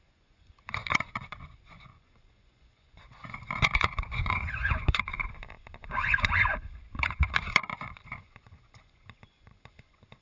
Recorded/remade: remade